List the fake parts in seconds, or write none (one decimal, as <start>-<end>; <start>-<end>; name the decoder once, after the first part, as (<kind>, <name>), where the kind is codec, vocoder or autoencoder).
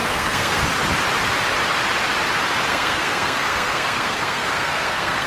0.0-0.6 (codec, SNAC); 2.7-5.3